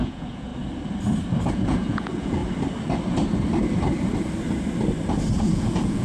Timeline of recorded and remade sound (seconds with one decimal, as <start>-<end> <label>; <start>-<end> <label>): 0.0-0.5 remade; 0.5-1.5 recorded; 1.5-2.4 remade; 2.4-5.4 recorded; 5.4-6.0 remade